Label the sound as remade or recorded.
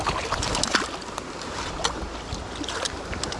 recorded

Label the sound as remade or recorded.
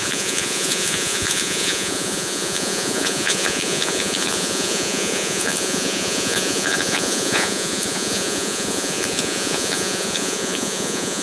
remade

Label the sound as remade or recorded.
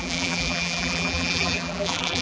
remade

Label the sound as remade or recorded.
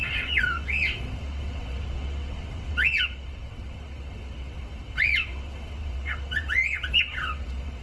remade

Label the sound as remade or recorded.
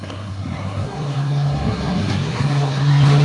remade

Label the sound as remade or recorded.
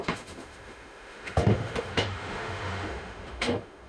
remade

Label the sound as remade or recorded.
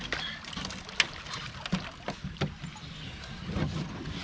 recorded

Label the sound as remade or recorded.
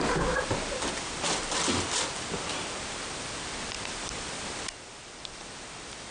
recorded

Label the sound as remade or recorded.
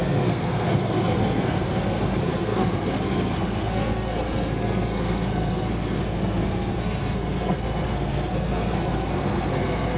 remade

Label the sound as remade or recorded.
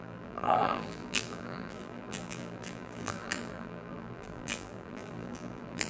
remade